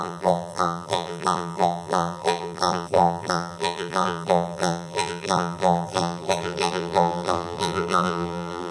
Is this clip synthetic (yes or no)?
yes